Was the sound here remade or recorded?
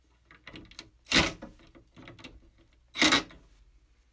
recorded